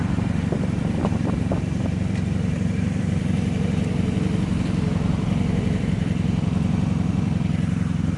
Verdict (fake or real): fake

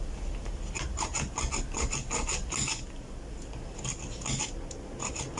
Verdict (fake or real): real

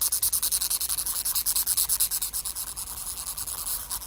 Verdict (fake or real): fake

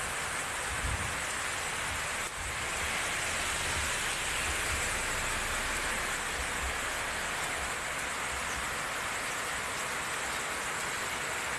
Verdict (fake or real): real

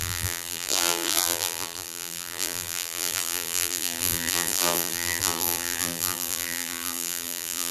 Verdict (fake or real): fake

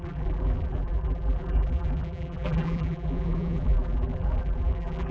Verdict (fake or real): fake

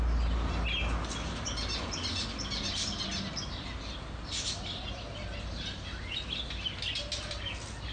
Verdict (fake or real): real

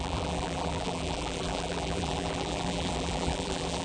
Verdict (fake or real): fake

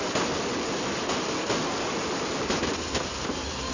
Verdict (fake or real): real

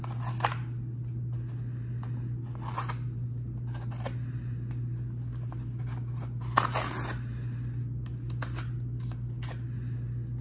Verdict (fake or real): real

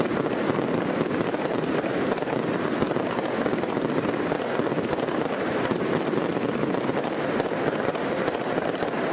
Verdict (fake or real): fake